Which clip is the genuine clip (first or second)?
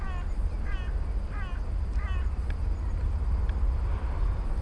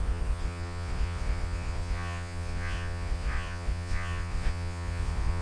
first